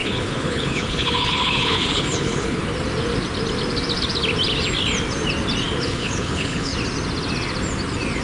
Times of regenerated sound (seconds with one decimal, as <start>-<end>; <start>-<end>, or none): 0.0-2.6; 5.8-6.7